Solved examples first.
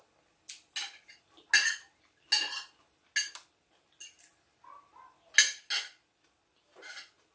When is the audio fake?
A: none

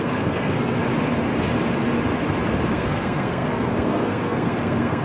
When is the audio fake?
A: 0.0-0.8; 2.7-5.0

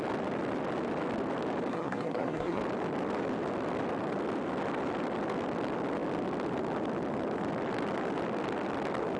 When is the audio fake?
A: 1.7-2.6

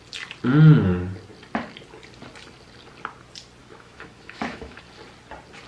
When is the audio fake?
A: 3.6-4.8